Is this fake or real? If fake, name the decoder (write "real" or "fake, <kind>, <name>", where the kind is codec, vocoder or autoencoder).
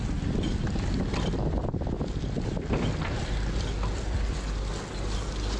real